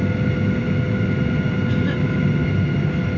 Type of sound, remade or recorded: recorded